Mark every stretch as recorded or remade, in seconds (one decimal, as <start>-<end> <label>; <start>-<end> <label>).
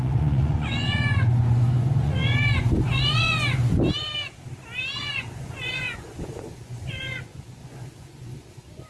0.0-3.7 remade; 3.7-5.0 recorded; 5.0-8.9 remade